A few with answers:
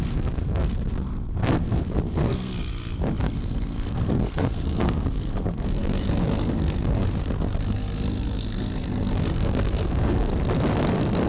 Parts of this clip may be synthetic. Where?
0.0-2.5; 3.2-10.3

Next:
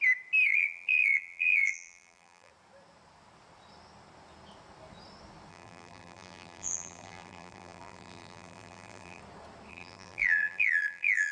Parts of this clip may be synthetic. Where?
0.5-2.5; 5.5-9.2; 9.7-11.3

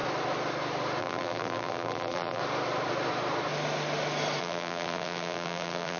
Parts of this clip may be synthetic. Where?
1.0-2.4; 4.4-6.0

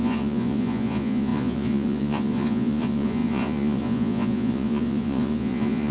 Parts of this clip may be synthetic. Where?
0.0-5.9

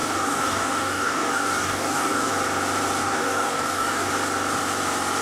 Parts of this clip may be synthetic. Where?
0.0-2.3; 3.0-4.1

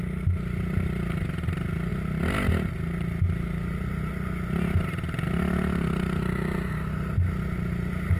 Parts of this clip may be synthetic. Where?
none

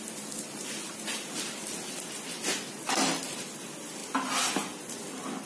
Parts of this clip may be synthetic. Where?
none